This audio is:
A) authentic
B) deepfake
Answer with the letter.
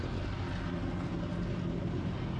A